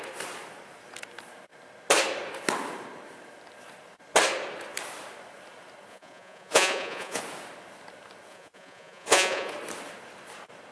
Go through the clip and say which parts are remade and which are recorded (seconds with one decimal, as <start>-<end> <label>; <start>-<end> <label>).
0.0-5.9 recorded; 5.9-7.2 remade; 7.2-8.3 recorded; 8.3-9.5 remade; 9.5-10.7 recorded